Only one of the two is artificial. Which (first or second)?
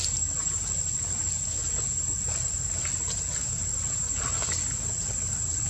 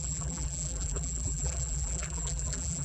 second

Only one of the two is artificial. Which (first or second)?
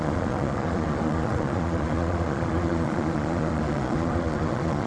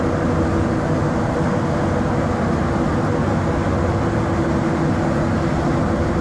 first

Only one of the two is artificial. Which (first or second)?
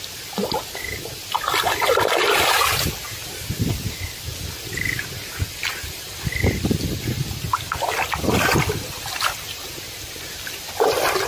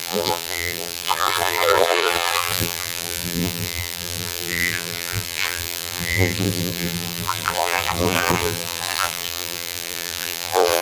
second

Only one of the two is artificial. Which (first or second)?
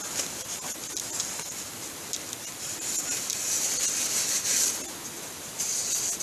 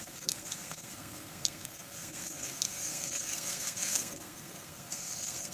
second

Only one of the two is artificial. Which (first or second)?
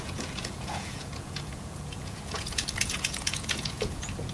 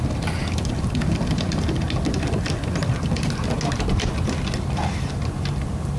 first